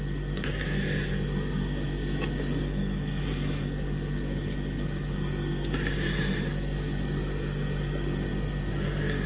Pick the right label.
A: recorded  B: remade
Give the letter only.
A